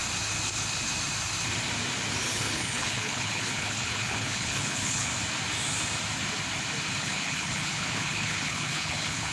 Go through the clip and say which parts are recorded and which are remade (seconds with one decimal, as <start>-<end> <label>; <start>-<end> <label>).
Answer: 0.0-2.2 recorded; 2.2-5.1 remade; 5.1-7.0 recorded; 7.0-9.3 remade